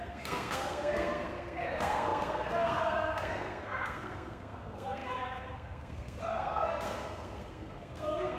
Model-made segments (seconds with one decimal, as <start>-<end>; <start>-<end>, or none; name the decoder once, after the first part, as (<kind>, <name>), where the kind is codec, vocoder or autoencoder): 0.0-8.4 (codec, SNAC)